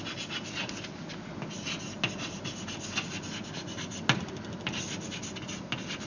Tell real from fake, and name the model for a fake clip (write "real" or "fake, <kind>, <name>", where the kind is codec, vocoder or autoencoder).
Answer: real